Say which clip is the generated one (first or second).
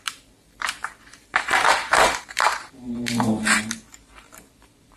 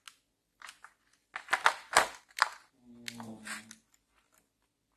first